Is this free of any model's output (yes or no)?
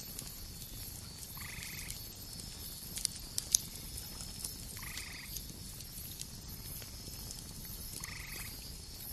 yes